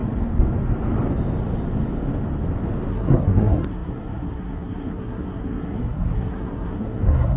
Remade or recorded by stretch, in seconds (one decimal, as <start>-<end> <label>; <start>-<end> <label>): 0.0-2.9 recorded; 2.9-7.4 remade